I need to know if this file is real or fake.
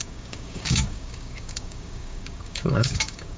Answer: fake